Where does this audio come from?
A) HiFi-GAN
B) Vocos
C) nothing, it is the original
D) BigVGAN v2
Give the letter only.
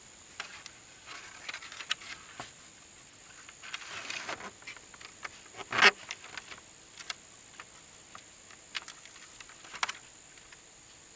C